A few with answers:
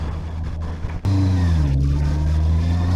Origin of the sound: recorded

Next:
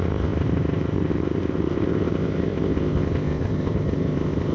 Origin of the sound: remade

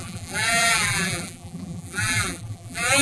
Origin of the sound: remade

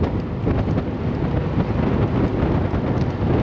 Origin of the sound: recorded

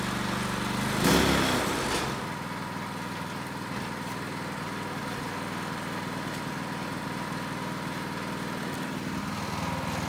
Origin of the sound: recorded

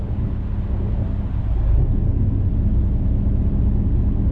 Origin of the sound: recorded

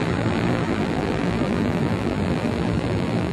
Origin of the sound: remade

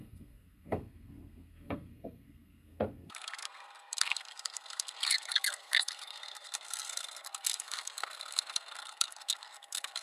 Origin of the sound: remade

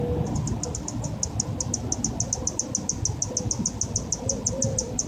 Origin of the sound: recorded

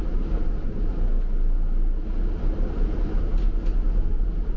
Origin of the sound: recorded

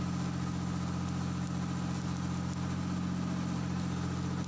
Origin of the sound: recorded